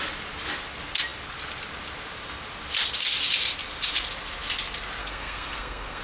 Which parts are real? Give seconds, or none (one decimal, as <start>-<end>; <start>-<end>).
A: 0.0-5.0

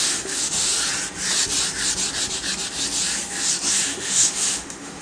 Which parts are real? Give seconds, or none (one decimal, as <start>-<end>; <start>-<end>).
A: 0.7-3.7

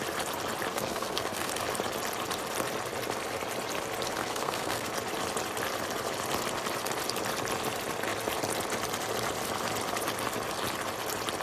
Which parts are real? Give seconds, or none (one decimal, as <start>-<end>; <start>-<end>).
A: 0.0-0.7; 1.5-4.2; 4.9-11.4

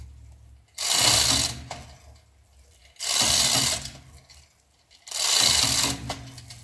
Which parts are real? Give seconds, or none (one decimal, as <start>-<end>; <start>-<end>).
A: 0.0-6.6

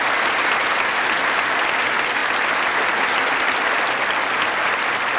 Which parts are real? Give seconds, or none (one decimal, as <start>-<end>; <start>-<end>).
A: 0.0-5.2

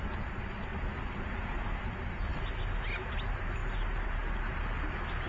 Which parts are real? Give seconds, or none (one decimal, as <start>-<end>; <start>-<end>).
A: 0.0-5.3

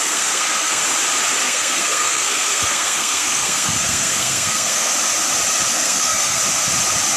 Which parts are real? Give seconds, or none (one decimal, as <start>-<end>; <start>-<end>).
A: 0.8-1.4; 4.9-5.7; 6.4-7.2